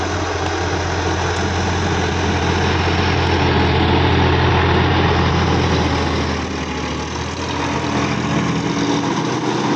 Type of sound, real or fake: real